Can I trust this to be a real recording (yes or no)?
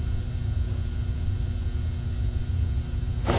yes